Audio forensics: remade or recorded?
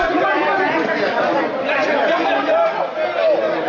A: recorded